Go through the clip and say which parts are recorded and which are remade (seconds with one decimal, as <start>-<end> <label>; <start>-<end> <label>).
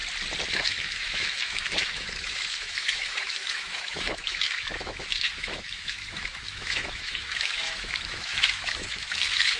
0.0-0.5 recorded; 0.5-9.6 remade